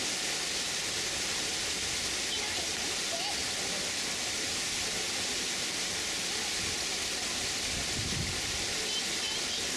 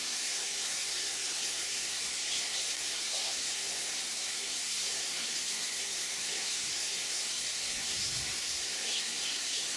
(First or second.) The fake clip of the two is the second